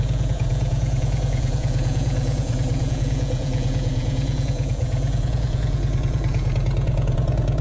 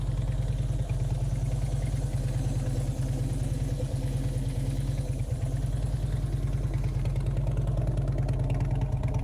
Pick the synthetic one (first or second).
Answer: first